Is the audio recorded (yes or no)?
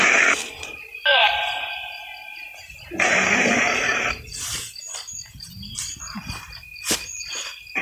no